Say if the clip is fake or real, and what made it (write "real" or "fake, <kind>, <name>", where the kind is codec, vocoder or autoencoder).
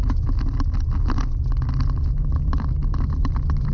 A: real